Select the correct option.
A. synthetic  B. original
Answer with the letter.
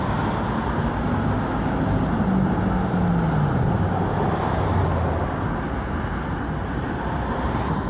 B